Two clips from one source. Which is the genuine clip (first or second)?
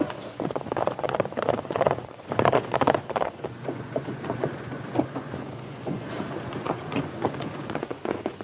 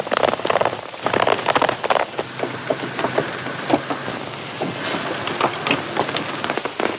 second